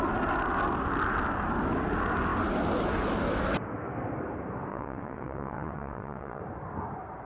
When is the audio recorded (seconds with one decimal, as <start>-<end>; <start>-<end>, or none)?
0.0-4.7; 6.4-7.3